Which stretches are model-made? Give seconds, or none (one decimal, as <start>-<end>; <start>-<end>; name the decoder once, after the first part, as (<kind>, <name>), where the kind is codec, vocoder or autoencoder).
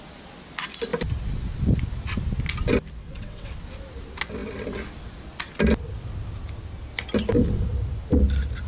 3.0-3.6 (vocoder, WaveNeXt)